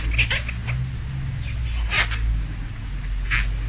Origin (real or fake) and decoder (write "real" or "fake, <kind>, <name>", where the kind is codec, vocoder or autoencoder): real